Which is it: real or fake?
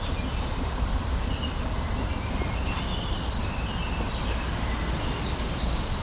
real